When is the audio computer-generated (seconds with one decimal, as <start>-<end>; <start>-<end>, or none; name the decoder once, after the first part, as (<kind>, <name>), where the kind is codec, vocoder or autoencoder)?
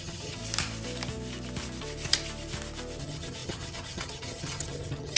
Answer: 0.0-0.4 (vocoder, HiFi-GAN); 3.0-5.2